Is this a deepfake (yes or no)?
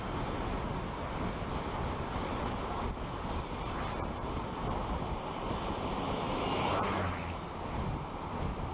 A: no